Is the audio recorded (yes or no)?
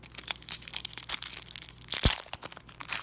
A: yes